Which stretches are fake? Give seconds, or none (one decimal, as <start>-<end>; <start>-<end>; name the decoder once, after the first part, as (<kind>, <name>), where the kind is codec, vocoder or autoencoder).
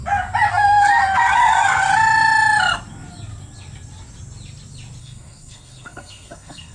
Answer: 0.5-1.9 (codec, SNAC); 5.0-6.7